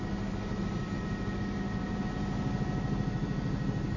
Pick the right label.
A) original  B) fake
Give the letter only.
A